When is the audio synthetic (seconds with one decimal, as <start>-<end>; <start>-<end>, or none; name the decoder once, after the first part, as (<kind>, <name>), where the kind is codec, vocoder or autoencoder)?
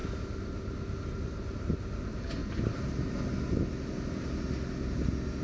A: 2.4-3.1 (vocoder, BigVGAN v2)